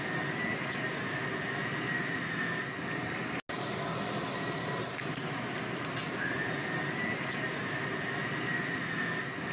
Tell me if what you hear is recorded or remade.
recorded